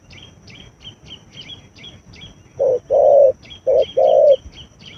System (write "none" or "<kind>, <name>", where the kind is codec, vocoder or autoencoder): none